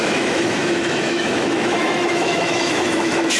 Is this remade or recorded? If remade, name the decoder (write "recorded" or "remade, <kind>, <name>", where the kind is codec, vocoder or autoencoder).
remade, autoencoder, DAC-VAE